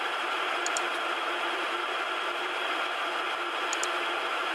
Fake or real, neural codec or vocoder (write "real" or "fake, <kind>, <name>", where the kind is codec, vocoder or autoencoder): real